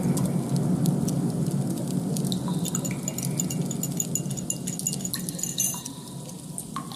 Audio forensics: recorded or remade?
recorded